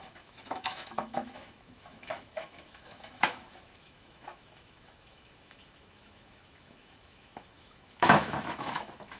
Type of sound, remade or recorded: remade